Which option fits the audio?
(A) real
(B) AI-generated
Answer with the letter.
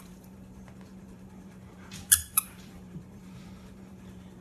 B